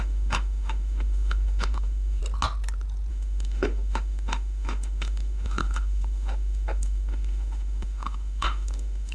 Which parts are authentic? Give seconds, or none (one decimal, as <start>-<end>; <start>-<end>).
2.2-3.1